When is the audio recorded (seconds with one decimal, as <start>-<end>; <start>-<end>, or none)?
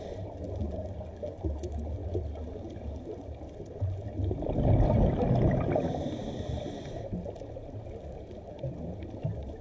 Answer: 0.0-9.6